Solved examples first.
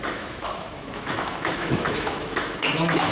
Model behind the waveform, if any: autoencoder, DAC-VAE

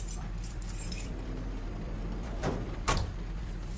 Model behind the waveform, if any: vocoder, BigVGAN v2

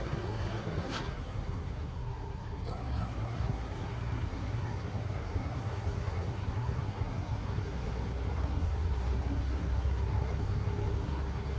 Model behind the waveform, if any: codec, SNAC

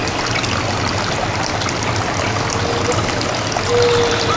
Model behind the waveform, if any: none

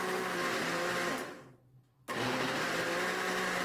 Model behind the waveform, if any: none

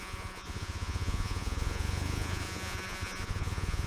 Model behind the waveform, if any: vocoder, Vocos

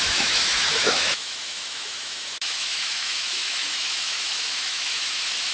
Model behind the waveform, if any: autoencoder, DAC-VAE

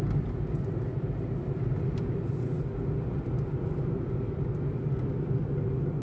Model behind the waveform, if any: none